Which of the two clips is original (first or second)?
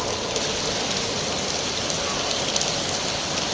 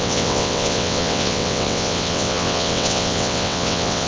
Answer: first